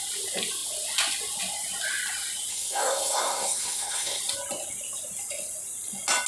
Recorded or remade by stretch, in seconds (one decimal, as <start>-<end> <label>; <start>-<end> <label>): 0.0-2.5 recorded; 2.5-4.2 remade; 4.2-6.3 recorded